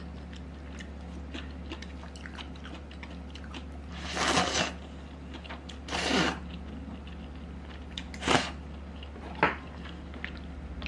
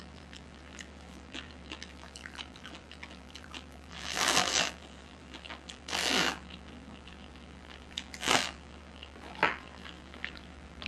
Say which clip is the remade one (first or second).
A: second